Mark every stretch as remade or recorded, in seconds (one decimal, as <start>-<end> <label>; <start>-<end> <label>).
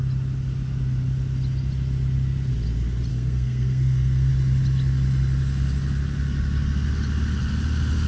0.0-3.1 recorded; 3.1-4.3 remade; 4.3-8.1 recorded